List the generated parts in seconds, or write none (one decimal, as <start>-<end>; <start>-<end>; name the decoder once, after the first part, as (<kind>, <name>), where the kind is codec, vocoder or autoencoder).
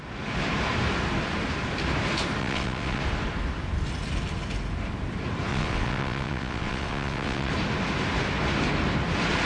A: 2.4-3.0 (vocoder, WaveNeXt); 5.5-7.5